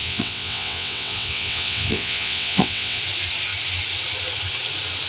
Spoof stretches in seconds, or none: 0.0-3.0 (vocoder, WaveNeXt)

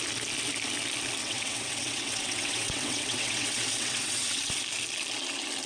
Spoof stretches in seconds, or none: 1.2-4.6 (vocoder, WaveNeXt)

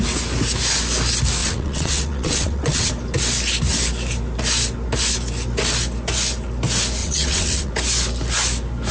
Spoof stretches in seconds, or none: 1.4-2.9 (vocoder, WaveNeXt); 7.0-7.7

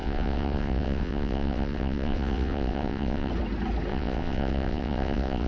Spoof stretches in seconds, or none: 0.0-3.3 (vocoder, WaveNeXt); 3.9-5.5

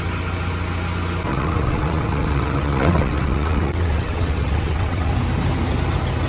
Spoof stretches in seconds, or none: 1.3-5.1 (vocoder, WaveNeXt)

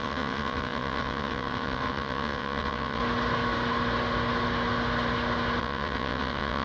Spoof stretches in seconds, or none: 0.0-3.0 (vocoder, WaveNeXt); 5.6-6.6